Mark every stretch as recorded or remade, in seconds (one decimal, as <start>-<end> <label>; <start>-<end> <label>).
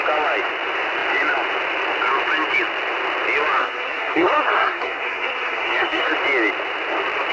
0.0-3.6 recorded; 3.6-6.1 remade; 6.1-7.3 recorded